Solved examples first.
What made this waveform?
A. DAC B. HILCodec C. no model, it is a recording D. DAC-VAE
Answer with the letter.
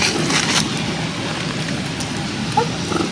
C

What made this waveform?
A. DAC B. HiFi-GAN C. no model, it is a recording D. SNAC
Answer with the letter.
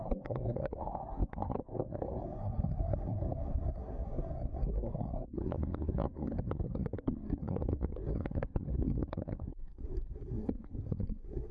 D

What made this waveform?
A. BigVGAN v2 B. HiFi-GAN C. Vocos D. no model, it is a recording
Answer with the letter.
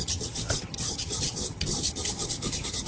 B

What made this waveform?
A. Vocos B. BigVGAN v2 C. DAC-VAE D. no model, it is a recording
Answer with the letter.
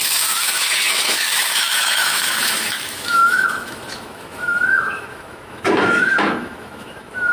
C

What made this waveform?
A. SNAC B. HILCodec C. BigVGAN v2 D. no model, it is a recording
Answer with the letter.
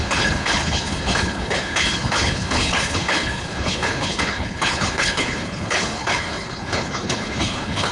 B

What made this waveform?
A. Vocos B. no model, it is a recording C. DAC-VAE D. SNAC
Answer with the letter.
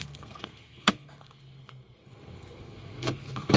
D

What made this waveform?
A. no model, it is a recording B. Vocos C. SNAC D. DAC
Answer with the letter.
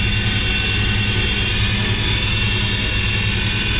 A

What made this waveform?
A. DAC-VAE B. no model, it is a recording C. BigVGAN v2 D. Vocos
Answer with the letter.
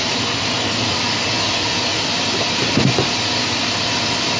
B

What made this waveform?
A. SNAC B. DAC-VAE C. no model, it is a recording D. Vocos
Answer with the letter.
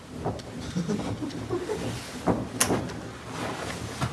C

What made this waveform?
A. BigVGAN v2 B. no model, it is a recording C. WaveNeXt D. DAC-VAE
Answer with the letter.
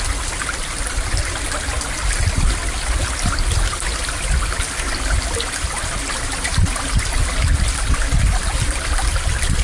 B